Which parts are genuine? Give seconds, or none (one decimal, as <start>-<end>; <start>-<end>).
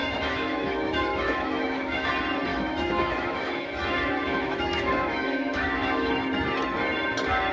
2.1-2.5; 6.1-7.5